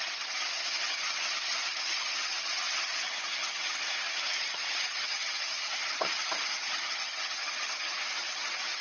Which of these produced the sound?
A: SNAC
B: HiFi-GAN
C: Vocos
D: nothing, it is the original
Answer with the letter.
B